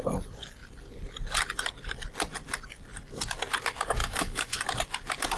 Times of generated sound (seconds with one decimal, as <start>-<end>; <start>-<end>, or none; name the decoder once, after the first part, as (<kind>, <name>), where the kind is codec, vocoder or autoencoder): 4.0-4.6 (autoencoder, DAC-VAE)